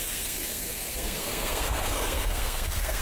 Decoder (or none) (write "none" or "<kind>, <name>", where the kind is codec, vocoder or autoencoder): codec, SNAC